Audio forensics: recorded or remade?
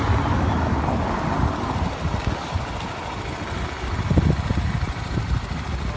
recorded